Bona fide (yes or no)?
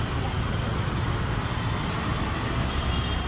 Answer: yes